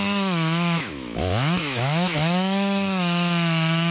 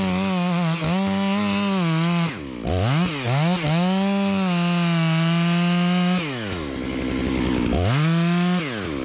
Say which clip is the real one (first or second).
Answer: second